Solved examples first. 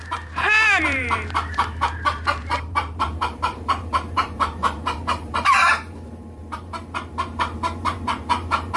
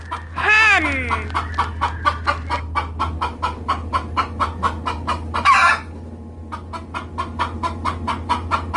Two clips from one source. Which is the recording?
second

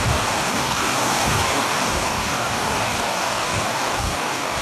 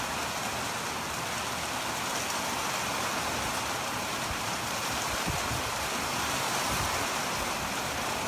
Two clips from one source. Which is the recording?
second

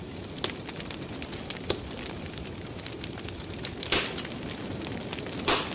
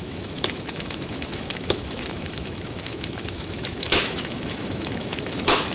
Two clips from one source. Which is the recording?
first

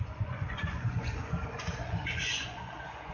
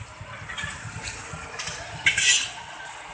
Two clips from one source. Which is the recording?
second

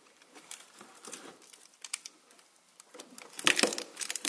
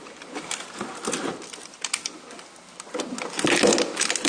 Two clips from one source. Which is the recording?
second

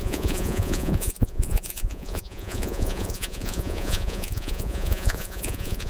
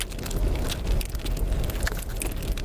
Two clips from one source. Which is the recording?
second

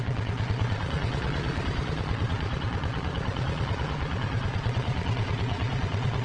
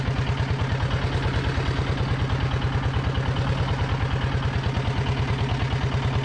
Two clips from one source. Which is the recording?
second